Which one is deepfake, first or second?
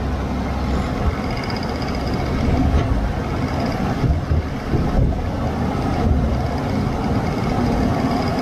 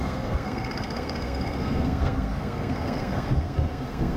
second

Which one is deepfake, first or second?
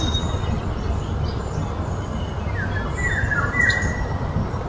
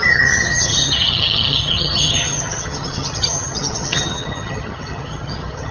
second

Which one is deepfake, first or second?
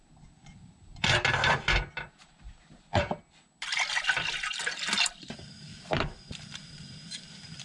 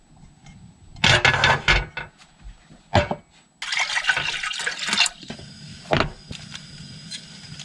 first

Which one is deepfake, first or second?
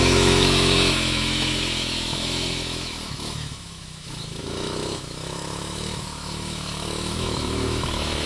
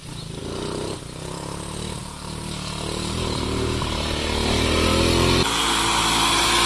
first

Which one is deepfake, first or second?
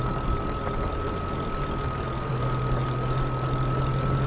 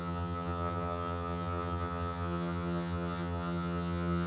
second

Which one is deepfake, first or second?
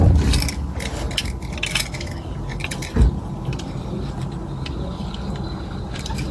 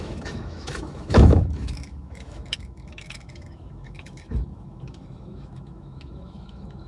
second